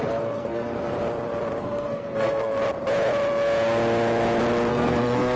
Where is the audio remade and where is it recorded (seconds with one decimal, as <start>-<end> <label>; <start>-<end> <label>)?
0.0-0.9 remade; 0.9-1.6 recorded; 1.6-2.5 remade; 2.5-4.7 recorded; 4.7-5.4 remade